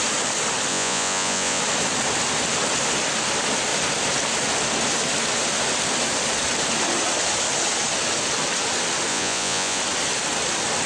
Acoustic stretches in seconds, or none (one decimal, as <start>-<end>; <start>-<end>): 0.0-0.7; 1.6-9.1; 9.8-10.9